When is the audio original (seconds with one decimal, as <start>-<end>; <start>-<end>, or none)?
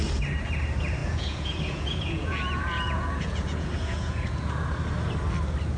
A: 0.0-1.0; 4.5-5.8